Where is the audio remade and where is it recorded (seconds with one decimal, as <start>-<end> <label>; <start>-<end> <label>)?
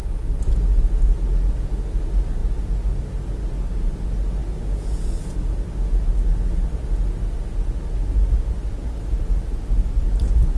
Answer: 0.0-10.6 recorded